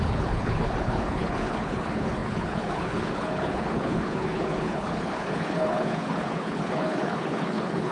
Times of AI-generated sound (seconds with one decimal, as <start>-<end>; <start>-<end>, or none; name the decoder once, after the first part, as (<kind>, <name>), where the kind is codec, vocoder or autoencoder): 0.0-7.9 (codec, HILCodec)